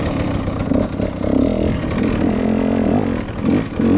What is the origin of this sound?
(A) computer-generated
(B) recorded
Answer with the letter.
B